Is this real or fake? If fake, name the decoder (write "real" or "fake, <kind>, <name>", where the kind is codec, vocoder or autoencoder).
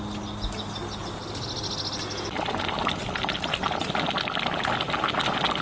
real